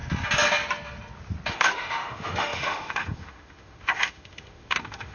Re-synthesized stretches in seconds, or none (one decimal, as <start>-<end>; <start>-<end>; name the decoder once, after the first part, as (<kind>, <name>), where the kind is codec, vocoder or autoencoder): 1.5-5.1 (autoencoder, DAC-VAE)